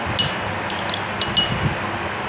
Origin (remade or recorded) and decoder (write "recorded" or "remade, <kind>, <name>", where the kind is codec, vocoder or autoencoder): recorded